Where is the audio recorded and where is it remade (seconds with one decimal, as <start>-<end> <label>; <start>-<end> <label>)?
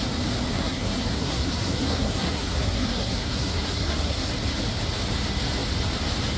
0.0-0.5 recorded; 0.5-4.3 remade; 4.3-6.4 recorded